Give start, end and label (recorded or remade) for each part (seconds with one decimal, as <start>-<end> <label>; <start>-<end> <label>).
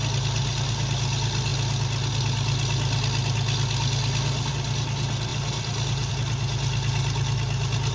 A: 0.0-7.9 recorded